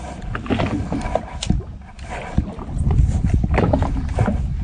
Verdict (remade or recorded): recorded